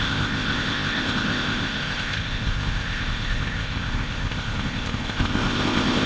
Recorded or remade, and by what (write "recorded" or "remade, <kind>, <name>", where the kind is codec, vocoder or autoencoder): remade, codec, ZipCodec